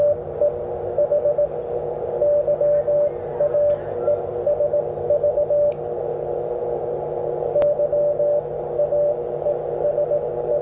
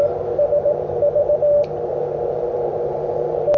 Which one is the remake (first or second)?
second